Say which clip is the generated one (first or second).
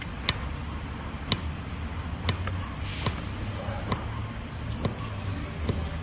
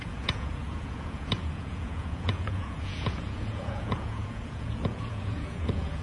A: second